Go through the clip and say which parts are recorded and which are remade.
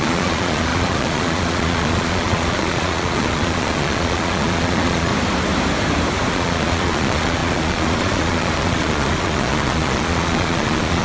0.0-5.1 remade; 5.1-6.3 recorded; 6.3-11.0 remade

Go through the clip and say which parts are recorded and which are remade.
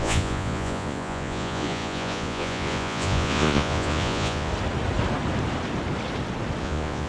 0.0-4.5 remade; 4.5-6.6 recorded; 6.6-7.1 remade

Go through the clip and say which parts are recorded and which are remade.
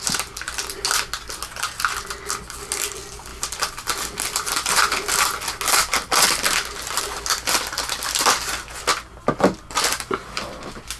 0.0-11.0 recorded